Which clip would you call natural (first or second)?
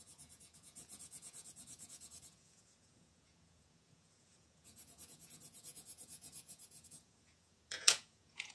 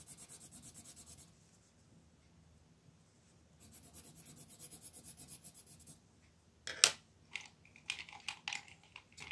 second